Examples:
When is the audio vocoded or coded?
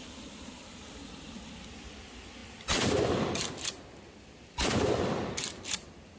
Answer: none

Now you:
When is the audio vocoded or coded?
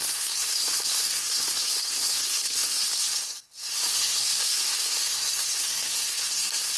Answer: 0.0-6.8 (codec, SNAC)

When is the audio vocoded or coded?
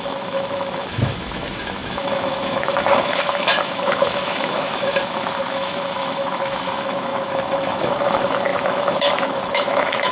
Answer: 0.0-10.1 (autoencoder, DAC-VAE)